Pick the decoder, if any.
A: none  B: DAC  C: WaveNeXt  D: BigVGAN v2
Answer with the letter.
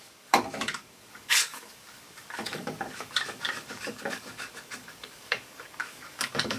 B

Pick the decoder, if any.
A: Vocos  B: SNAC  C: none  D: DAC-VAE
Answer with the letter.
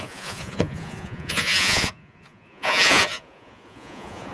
A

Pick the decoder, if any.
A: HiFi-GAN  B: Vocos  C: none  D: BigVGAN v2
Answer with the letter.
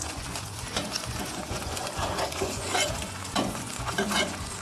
B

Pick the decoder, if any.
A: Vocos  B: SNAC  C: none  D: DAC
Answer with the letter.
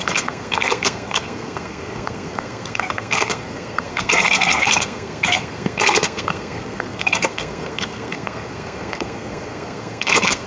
B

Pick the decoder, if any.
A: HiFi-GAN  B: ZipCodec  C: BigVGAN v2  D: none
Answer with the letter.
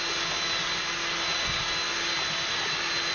D